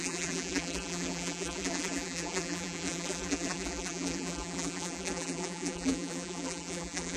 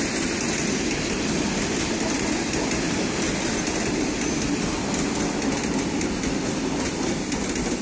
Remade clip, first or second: first